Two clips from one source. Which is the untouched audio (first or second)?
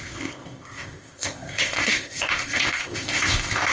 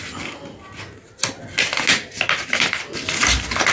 second